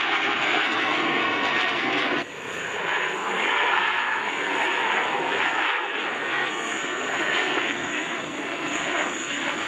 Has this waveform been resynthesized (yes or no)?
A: yes